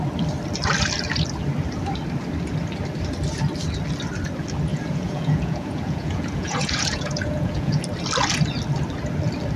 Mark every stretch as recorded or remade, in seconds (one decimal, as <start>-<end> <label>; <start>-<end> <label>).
0.0-4.7 recorded; 4.7-7.8 remade; 7.8-9.6 recorded